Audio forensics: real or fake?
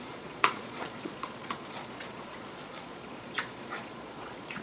fake